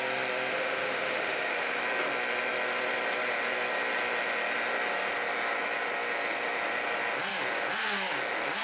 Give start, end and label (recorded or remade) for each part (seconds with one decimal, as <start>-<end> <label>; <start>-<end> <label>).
0.0-0.5 recorded; 0.5-1.8 remade; 1.8-8.6 recorded